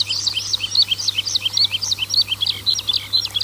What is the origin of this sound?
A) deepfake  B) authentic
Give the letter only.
B